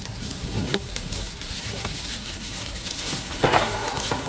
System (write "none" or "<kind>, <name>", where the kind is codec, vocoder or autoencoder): codec, SNAC